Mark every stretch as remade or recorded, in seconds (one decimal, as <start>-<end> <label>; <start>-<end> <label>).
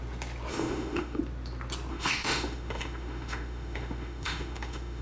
0.0-0.5 recorded; 0.5-1.2 remade; 1.2-1.9 recorded; 1.9-5.0 remade